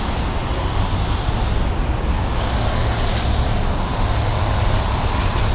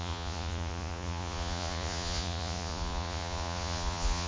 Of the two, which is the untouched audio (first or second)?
first